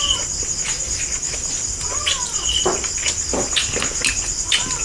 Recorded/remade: recorded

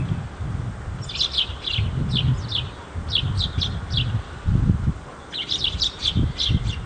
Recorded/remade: recorded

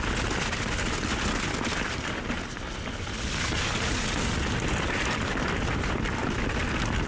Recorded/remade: recorded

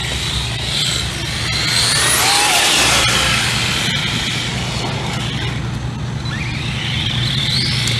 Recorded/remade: recorded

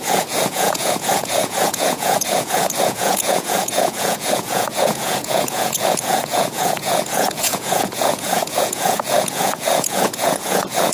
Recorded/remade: remade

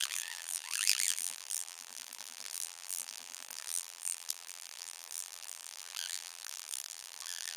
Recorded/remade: remade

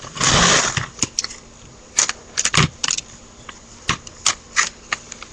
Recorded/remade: recorded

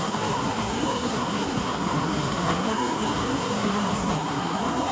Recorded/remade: remade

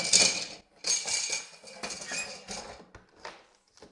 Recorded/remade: recorded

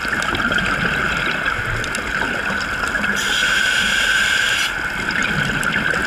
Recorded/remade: recorded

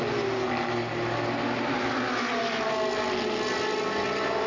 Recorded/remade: recorded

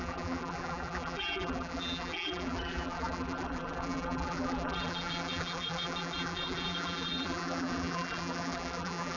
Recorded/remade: remade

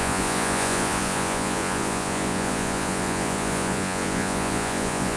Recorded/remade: remade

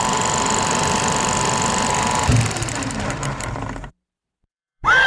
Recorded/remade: remade